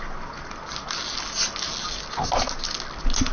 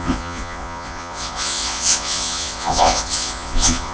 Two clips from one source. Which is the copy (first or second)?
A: second